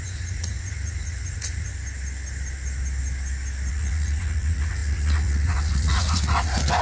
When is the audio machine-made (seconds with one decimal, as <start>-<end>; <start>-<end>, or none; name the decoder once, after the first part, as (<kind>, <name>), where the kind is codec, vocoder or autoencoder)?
0.0-1.7 (vocoder, Vocos); 3.7-6.8